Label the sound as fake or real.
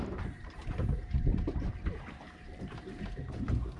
fake